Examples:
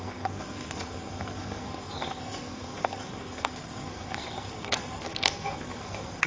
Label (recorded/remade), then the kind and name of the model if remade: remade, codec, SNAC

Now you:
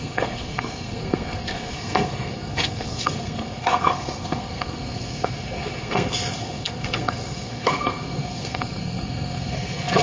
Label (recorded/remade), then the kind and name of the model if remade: remade, codec, SNAC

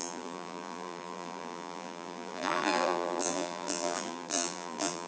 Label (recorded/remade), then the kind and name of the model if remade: remade, vocoder, BigVGAN v2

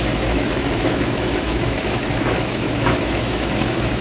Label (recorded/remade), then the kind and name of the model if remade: remade, autoencoder, DAC-VAE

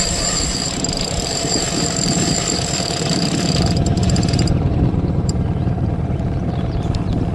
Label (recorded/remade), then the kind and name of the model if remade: remade, vocoder, BigVGAN v2